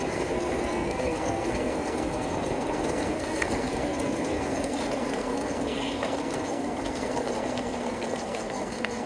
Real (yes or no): no